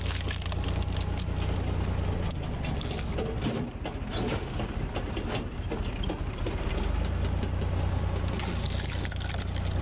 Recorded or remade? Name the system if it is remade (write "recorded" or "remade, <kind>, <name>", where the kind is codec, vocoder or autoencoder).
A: recorded